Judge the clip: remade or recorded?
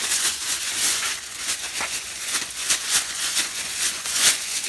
remade